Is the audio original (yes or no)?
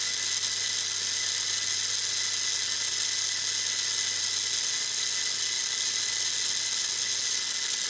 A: yes